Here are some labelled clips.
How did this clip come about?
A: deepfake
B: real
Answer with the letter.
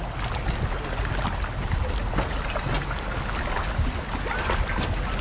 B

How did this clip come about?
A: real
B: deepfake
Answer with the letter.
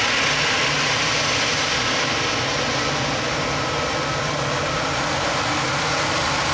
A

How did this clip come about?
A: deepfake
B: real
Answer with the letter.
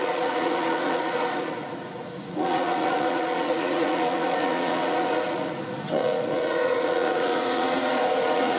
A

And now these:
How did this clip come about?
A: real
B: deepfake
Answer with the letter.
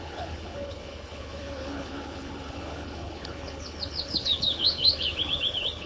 B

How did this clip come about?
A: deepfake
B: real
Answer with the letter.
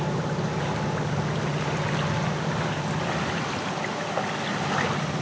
B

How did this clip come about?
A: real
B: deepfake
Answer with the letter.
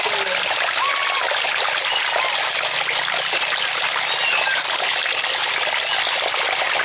A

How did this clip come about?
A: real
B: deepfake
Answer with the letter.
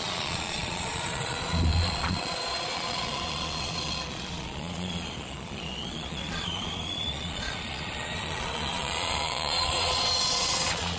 B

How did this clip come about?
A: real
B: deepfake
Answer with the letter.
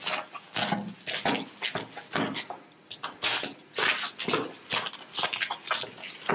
A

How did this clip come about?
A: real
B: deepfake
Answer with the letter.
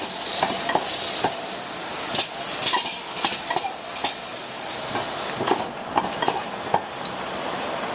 A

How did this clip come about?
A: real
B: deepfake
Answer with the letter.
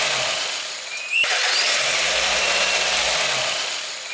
A